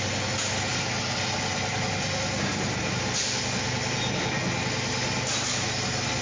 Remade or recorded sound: recorded